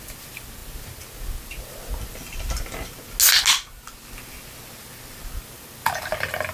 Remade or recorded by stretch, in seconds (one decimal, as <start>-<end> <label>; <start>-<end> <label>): 0.0-6.5 recorded